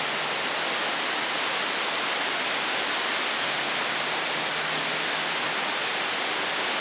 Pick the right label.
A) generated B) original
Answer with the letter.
B